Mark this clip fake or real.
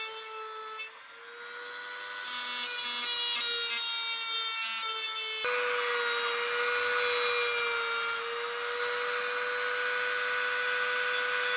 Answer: real